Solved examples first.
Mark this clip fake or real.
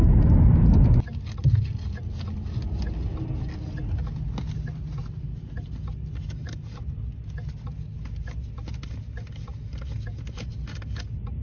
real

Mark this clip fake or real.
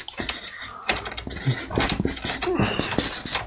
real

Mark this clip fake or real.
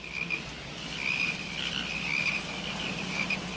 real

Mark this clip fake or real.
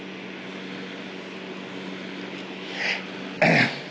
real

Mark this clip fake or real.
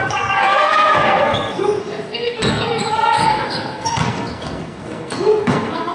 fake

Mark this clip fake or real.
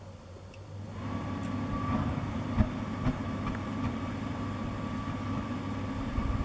real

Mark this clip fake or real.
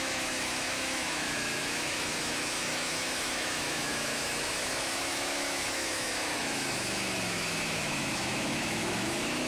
fake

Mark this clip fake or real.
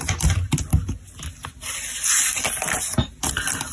real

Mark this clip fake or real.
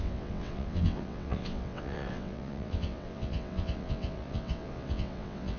fake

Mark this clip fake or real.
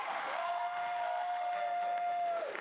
fake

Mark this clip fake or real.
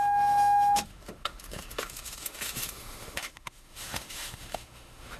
fake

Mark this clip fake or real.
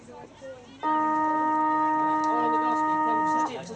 real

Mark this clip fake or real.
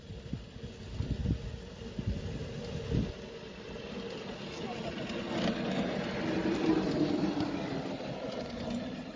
real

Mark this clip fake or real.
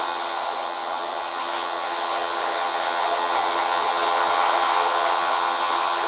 fake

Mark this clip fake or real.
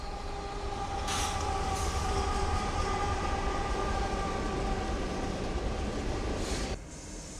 real